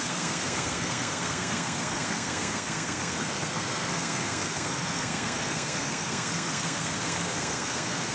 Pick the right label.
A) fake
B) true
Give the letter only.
A